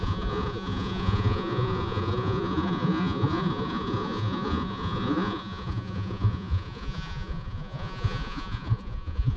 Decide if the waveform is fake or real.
fake